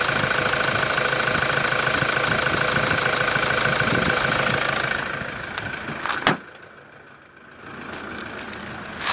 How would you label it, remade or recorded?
recorded